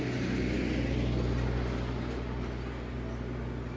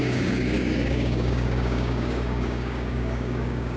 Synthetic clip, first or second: second